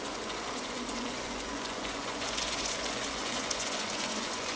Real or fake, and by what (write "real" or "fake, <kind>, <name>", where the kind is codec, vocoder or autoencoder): fake, vocoder, Vocos